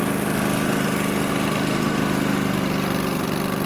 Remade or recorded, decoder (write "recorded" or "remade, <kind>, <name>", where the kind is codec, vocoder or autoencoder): recorded